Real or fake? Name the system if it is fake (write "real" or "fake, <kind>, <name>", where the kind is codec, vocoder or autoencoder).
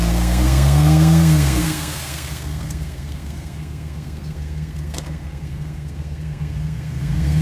fake, codec, SNAC